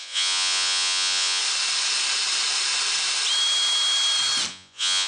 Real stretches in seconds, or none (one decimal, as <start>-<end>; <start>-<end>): 1.4-4.5